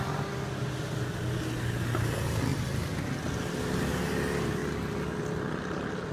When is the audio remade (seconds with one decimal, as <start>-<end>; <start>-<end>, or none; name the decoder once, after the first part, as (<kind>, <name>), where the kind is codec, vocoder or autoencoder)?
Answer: none